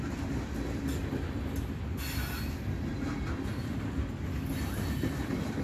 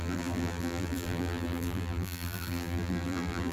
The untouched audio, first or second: first